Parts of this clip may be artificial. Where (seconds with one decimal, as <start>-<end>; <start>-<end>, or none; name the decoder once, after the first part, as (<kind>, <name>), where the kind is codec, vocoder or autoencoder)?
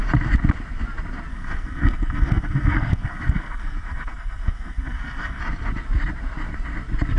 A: 1.3-5.4 (codec, SNAC)